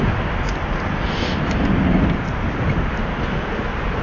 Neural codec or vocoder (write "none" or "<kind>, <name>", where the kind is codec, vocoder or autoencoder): none